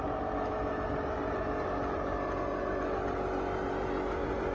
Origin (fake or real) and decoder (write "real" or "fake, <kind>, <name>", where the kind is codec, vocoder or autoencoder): real